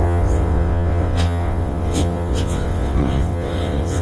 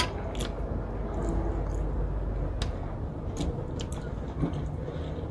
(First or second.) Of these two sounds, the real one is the second